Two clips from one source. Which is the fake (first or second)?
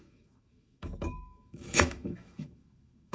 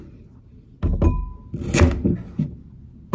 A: first